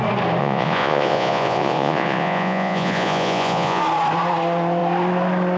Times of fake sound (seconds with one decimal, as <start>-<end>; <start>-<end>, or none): 0.4-3.8

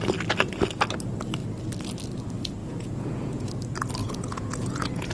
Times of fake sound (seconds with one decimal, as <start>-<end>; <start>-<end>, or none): 2.6-3.5; 4.0-5.1

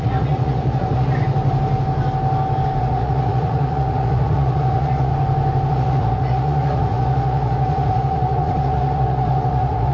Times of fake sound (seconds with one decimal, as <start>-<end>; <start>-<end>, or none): 0.0-1.2; 2.8-5.1; 5.7-9.9

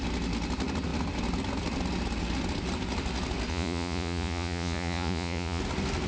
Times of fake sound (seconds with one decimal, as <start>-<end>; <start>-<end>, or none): 3.5-5.6

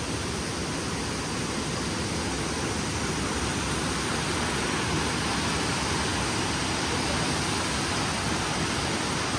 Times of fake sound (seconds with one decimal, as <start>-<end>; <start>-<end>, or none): none